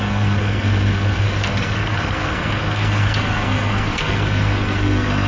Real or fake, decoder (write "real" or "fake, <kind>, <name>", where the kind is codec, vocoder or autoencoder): fake, codec, SNAC